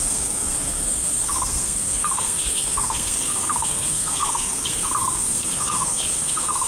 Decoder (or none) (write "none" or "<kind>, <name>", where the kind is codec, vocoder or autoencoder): codec, SNAC